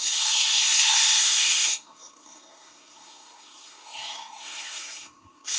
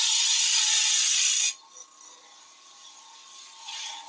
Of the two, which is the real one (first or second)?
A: second